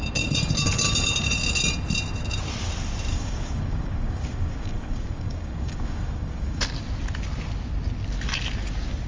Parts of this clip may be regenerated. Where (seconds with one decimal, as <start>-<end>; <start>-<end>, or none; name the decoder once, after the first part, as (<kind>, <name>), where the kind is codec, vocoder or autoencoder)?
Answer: 3.1-6.6 (codec, DAC)

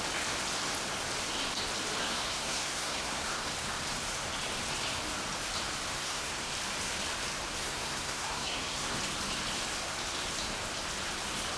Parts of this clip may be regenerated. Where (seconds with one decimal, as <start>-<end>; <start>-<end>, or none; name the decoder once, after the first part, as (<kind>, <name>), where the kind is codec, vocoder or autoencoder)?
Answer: 2.0-3.5 (codec, SNAC); 5.9-6.5; 7.6-9.0

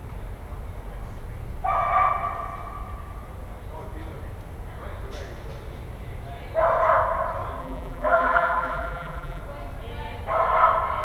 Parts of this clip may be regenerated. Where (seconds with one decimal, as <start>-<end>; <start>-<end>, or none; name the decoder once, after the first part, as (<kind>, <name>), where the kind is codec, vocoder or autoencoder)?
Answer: 7.6-9.4 (vocoder, BigVGAN v2)

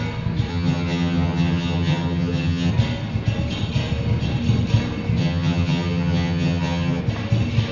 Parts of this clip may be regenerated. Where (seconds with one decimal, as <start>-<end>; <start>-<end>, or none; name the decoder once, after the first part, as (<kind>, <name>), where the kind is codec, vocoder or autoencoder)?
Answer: 0.5-2.7 (vocoder, HiFi-GAN); 5.2-7.0

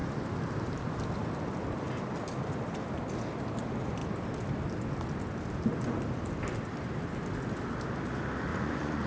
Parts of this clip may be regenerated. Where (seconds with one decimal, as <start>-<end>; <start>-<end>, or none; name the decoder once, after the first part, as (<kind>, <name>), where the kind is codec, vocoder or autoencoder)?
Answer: 8.5-9.1 (vocoder, Vocos)

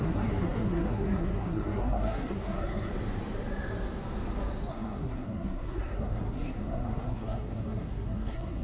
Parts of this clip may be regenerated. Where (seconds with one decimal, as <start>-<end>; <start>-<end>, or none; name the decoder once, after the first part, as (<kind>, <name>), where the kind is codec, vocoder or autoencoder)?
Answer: 0.0-2.9 (codec, SNAC); 4.7-8.6

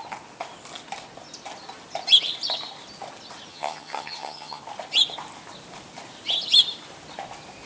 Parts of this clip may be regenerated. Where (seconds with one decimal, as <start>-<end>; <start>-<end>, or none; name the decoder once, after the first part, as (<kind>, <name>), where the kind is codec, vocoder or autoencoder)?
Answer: 3.5-4.6 (vocoder, HiFi-GAN)

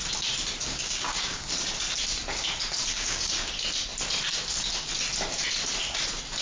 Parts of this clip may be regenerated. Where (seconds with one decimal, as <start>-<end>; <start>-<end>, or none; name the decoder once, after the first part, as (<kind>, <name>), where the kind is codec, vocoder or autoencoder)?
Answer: 0.7-1.5 (codec, DAC); 2.9-3.5